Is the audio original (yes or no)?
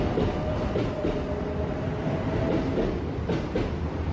yes